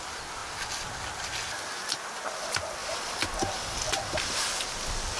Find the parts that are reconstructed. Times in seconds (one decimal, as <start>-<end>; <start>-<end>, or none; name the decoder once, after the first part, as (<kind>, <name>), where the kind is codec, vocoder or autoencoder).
2.8-4.4 (vocoder, BigVGAN v2)